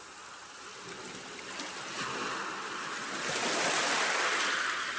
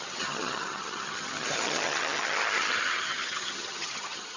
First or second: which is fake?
second